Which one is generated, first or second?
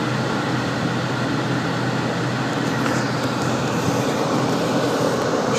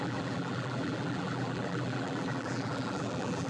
second